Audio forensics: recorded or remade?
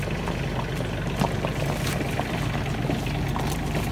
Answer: recorded